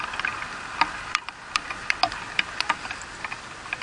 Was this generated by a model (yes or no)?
no